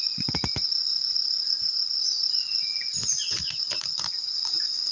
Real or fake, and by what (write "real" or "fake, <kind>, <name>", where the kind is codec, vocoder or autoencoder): fake, vocoder, Vocos